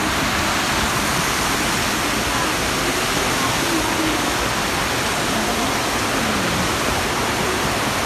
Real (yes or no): yes